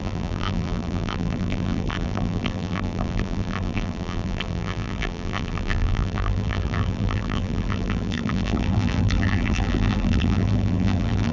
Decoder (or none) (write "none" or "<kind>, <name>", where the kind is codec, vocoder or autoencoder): vocoder, BigVGAN v2